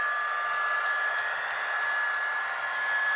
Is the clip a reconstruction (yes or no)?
no